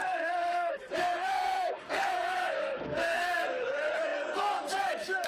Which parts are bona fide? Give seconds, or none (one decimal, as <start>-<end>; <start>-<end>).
none